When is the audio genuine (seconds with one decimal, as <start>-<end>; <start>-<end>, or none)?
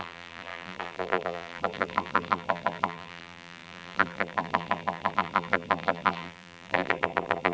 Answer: none